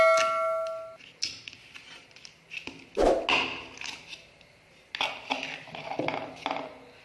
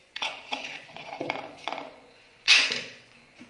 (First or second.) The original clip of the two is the first